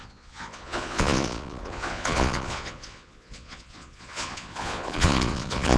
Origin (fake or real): fake